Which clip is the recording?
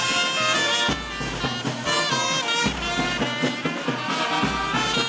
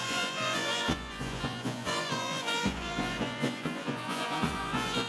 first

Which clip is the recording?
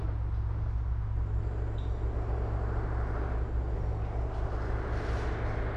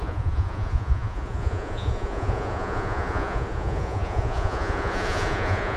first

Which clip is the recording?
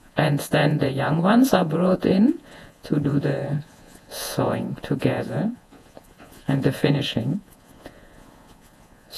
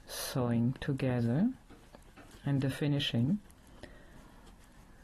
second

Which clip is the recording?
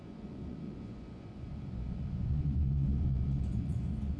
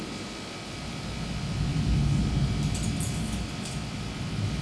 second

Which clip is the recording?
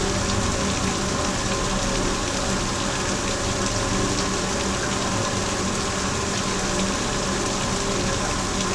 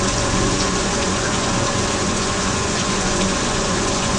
first